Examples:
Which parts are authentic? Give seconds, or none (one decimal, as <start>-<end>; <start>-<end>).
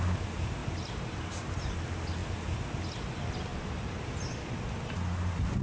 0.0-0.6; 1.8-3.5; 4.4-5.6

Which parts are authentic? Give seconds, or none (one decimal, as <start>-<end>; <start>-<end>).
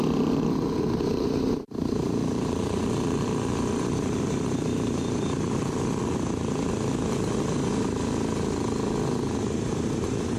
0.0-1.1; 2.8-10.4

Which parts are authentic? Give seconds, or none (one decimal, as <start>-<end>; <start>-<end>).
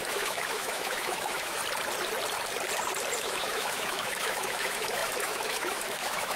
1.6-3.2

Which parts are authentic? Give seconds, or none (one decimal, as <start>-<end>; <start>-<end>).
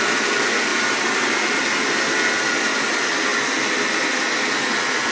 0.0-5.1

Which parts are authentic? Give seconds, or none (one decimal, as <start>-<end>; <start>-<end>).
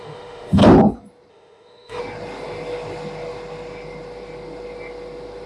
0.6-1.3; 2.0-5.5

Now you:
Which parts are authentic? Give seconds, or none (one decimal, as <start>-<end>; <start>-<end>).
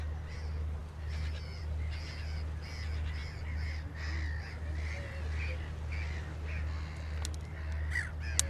0.0-8.5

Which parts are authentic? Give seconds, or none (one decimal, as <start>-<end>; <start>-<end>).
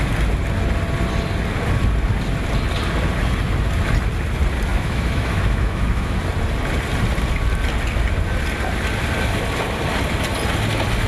0.0-4.7; 6.2-11.1